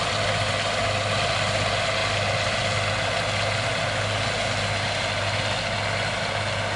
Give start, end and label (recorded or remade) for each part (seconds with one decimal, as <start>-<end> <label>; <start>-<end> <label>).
0.0-6.8 recorded